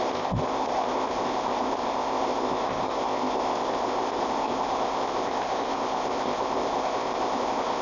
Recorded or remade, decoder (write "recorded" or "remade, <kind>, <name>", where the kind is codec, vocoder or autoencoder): remade, codec, ZipCodec